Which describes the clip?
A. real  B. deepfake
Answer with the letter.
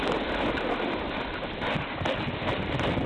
A